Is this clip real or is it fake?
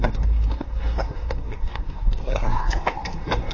fake